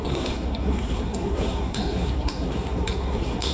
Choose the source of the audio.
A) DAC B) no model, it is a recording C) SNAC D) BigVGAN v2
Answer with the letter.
C